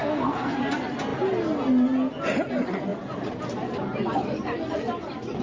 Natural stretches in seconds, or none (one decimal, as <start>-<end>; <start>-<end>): 0.6-5.4